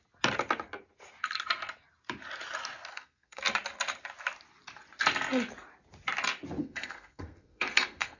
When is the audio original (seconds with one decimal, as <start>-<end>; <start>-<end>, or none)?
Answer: 0.0-2.9; 3.4-6.6